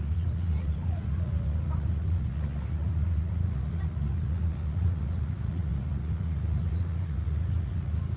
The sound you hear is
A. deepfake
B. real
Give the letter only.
A